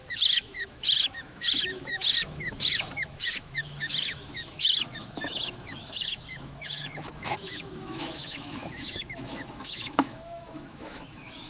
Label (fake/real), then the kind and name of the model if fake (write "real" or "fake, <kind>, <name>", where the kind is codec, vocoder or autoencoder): fake, autoencoder, DAC-VAE